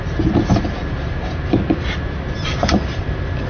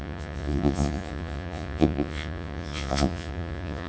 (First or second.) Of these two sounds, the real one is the first